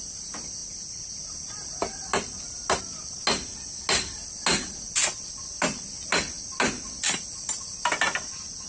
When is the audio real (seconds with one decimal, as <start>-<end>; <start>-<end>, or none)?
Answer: 0.0-8.7